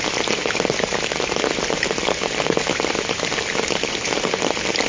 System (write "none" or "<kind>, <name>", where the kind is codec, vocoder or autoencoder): none